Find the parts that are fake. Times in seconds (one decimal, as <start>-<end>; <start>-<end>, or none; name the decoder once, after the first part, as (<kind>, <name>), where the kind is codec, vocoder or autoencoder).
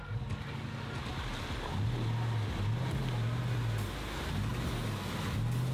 none